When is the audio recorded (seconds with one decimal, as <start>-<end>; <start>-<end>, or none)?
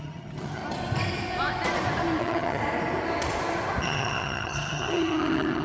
0.6-2.2; 2.6-3.8